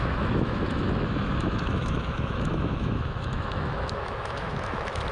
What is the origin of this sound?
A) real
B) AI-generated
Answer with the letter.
B